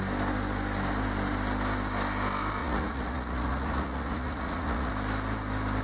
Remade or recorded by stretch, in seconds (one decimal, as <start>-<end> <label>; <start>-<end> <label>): 0.0-2.6 recorded; 2.6-4.9 remade; 4.9-5.8 recorded